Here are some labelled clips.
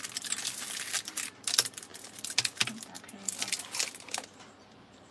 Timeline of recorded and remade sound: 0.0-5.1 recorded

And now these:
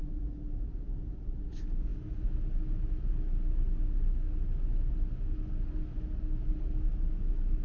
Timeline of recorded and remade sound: 0.0-7.6 recorded

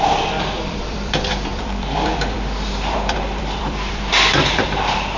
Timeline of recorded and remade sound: 0.0-5.2 remade

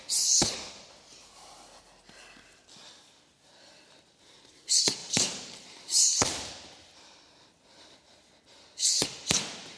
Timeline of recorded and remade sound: 0.0-5.0 recorded; 5.0-6.5 remade; 6.5-9.8 recorded